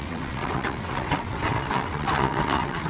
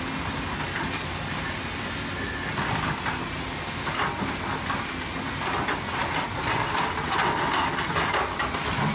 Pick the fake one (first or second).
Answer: first